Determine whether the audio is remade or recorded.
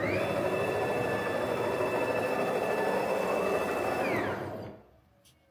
recorded